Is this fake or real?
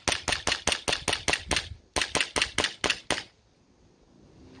real